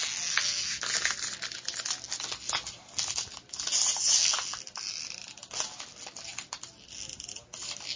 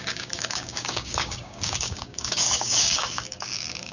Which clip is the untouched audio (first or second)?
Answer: first